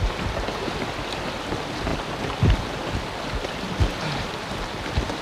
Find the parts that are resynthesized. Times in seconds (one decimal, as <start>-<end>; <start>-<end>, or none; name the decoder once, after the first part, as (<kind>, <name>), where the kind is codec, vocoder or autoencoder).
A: none